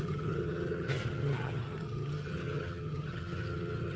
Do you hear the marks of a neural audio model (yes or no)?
yes